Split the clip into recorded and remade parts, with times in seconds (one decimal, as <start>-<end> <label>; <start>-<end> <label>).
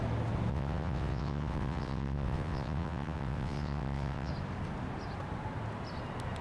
0.0-0.5 recorded; 0.5-4.3 remade; 4.3-6.4 recorded